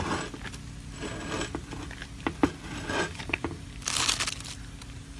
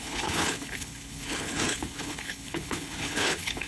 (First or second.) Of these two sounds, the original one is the first